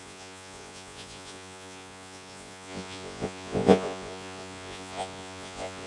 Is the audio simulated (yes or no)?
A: yes